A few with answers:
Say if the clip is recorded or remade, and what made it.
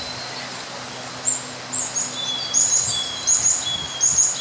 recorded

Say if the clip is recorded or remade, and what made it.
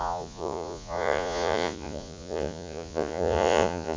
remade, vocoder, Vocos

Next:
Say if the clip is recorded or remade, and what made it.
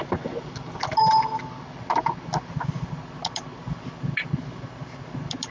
recorded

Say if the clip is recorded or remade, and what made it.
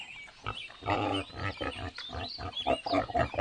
recorded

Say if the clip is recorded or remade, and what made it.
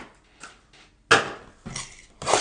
recorded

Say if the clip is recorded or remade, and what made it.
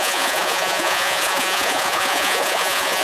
remade, vocoder, Vocos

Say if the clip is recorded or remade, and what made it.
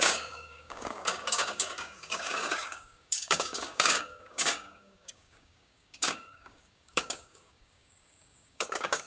remade, codec, DAC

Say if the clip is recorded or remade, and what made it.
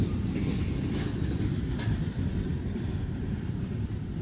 recorded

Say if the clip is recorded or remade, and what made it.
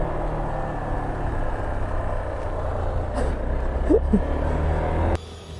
recorded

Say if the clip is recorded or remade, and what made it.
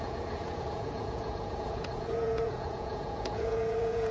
remade, vocoder, Vocos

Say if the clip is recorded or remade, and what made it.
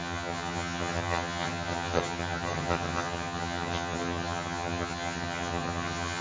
remade, vocoder, HiFi-GAN